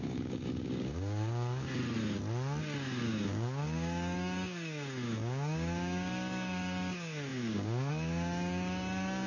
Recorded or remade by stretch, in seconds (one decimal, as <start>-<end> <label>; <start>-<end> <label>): 0.0-1.8 remade; 1.8-2.6 recorded; 2.6-9.3 remade